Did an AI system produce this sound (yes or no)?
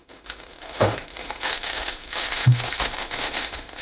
yes